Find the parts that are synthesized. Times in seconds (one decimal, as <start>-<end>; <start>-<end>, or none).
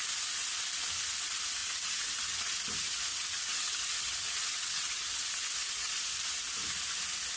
1.6-2.6; 3.1-6.0